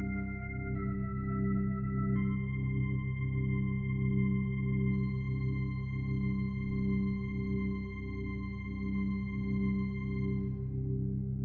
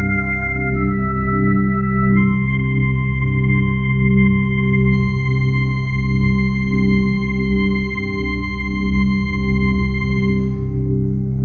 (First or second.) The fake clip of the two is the second